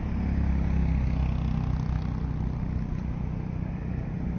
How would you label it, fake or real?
real